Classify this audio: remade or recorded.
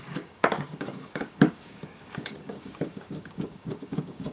remade